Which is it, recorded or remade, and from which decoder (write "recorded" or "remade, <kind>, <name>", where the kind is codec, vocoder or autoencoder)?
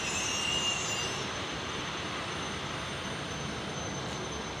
recorded